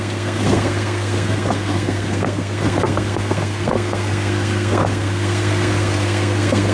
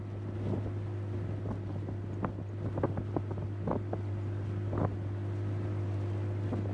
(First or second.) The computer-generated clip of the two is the first